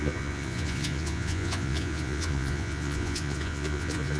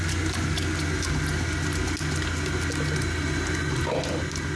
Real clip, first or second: second